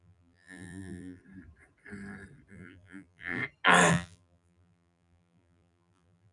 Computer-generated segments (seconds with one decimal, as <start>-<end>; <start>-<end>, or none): 0.0-1.2; 2.5-3.4; 3.9-6.3